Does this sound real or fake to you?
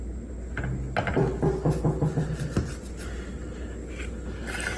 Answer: real